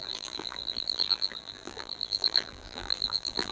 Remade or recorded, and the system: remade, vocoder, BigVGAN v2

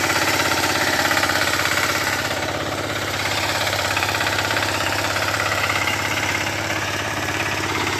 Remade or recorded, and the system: remade, vocoder, BigVGAN v2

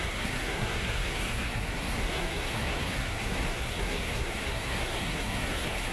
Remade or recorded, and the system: remade, codec, SNAC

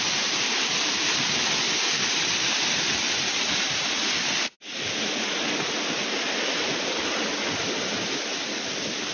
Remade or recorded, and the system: recorded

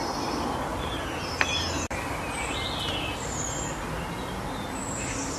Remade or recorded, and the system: recorded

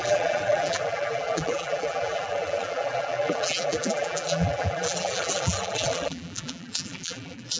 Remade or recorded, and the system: remade, vocoder, BigVGAN v2